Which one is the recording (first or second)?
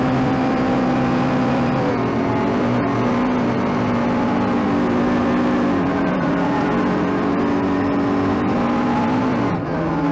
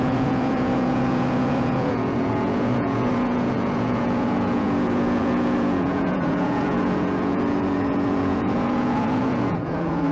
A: first